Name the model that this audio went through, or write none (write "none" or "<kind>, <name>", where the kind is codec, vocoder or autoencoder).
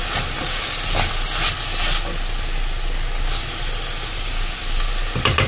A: none